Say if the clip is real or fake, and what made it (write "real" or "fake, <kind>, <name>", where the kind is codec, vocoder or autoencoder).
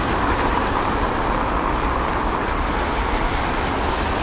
real